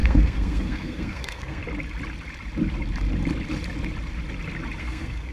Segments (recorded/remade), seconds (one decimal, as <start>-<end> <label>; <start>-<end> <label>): 0.0-1.6 remade; 1.6-4.8 recorded; 4.8-5.3 remade